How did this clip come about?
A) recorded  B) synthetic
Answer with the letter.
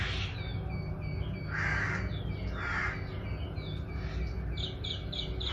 A